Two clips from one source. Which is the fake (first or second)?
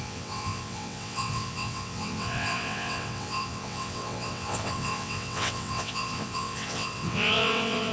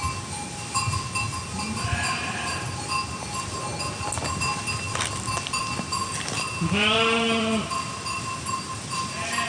first